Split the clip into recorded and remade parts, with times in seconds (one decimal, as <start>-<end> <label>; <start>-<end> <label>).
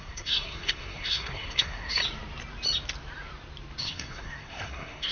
0.0-2.0 remade; 2.0-3.8 recorded; 3.8-5.1 remade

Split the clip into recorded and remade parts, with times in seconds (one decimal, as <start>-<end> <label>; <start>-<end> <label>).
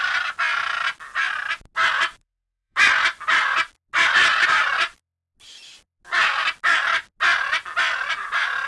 0.0-2.1 recorded; 2.1-2.8 remade; 2.8-4.3 recorded; 4.3-5.0 remade; 5.0-8.7 recorded